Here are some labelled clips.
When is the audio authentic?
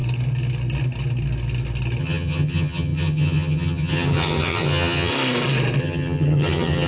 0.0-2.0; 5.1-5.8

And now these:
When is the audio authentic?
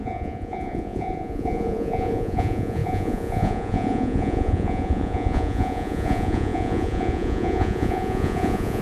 none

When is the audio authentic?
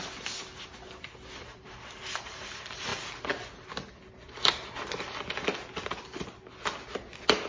0.0-7.5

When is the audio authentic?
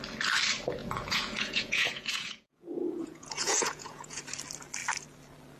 0.0-0.8; 4.2-5.6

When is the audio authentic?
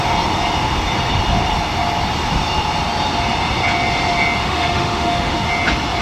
0.0-4.4; 5.5-6.0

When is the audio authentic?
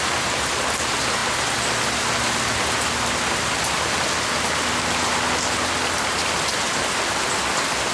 0.0-7.9